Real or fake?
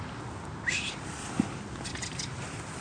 real